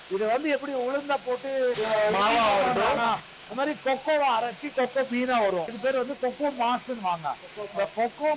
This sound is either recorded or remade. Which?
remade